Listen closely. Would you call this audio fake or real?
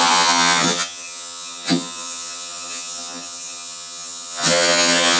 fake